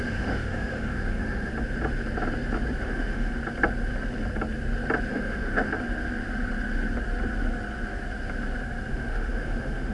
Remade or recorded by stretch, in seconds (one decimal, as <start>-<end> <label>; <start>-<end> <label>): 0.0-1.5 remade; 1.5-2.8 recorded; 2.8-3.4 remade; 3.4-5.1 recorded; 5.1-5.7 remade; 5.7-8.9 recorded; 8.9-9.9 remade